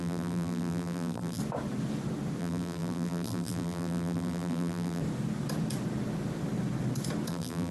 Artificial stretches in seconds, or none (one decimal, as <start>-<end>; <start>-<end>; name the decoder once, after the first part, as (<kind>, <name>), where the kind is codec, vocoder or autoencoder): 0.0-1.4 (vocoder, BigVGAN v2); 2.4-5.0; 7.3-7.7